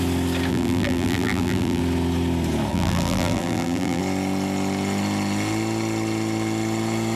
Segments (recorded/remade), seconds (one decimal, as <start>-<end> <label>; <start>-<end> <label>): 0.0-0.5 recorded; 0.5-1.8 remade; 1.8-2.7 recorded; 2.7-4.0 remade; 4.0-7.2 recorded